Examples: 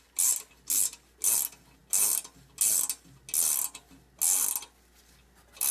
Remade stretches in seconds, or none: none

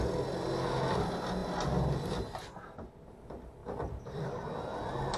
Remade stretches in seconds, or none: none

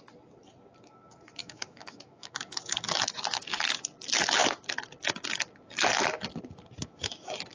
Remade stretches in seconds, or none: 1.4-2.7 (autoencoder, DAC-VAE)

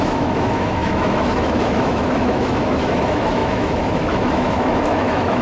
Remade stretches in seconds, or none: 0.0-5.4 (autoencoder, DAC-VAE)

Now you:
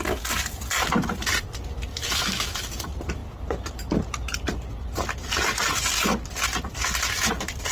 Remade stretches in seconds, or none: 1.9-2.7 (autoencoder, DAC-VAE)

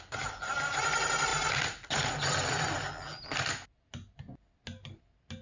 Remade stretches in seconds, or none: none